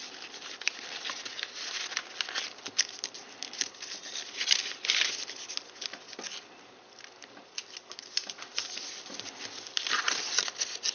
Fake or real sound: real